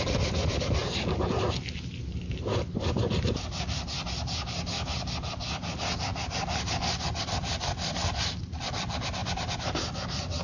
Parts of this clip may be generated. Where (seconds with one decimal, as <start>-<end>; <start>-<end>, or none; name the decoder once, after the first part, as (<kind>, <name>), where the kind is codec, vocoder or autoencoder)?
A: 0.0-0.8 (vocoder, BigVGAN v2); 2.0-6.1; 6.8-10.4